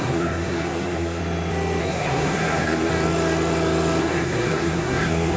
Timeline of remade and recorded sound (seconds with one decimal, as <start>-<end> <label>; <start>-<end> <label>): 0.0-1.2 remade; 1.2-1.8 recorded; 1.8-2.9 remade; 2.9-4.0 recorded; 4.0-5.4 remade